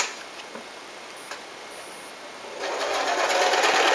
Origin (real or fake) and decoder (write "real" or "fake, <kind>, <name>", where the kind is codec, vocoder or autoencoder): real